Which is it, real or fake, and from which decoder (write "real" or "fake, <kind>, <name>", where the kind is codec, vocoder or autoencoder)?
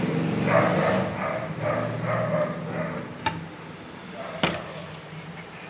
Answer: real